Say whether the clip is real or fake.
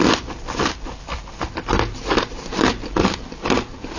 real